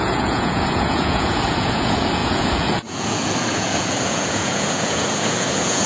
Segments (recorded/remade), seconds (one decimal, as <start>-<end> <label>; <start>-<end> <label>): 0.0-5.9 remade